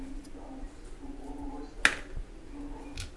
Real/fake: real